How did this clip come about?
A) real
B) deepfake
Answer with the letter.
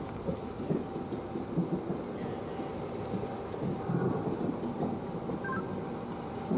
A